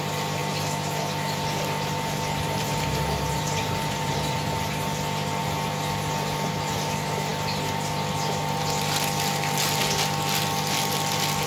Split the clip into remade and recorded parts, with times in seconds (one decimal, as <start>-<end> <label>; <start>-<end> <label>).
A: 0.0-11.5 recorded